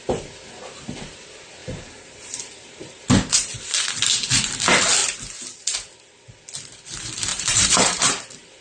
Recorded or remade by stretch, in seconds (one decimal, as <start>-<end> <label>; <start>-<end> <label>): 0.0-1.6 recorded; 1.6-4.1 remade; 4.1-7.3 recorded; 7.3-8.0 remade; 8.0-8.6 recorded